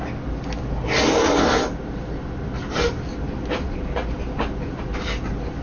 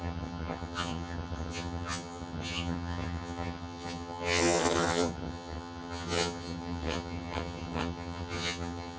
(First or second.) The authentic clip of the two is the first